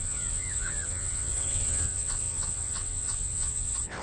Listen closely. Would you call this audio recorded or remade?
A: remade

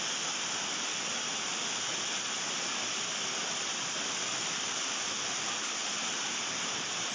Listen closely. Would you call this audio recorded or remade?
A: recorded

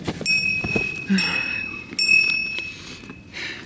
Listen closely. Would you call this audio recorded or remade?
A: recorded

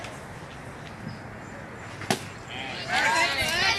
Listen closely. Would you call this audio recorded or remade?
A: recorded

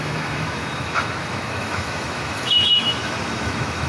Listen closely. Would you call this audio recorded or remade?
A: remade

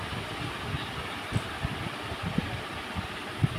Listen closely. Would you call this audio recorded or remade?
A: recorded